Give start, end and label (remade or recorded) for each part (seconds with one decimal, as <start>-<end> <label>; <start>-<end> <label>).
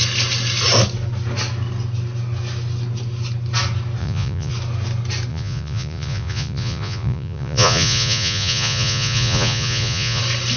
0.0-4.0 recorded; 4.0-4.5 remade; 4.5-5.3 recorded; 5.3-10.2 remade; 10.2-10.6 recorded